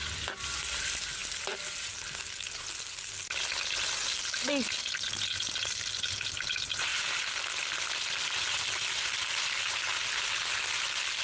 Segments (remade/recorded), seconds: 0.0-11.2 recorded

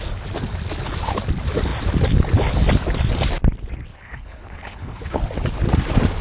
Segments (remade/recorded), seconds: 0.0-3.9 recorded; 3.9-5.2 remade; 5.2-6.2 recorded

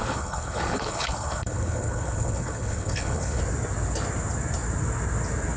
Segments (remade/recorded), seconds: 0.0-3.4 remade; 3.4-5.6 recorded

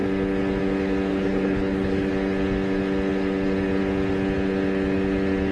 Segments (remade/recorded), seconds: 0.0-1.1 recorded; 1.1-2.1 remade; 2.1-5.5 recorded

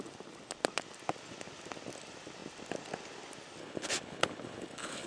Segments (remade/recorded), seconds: 0.0-3.6 recorded; 3.6-5.1 remade